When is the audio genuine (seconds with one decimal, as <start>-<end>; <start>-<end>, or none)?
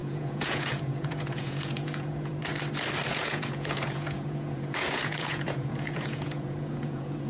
2.5-3.1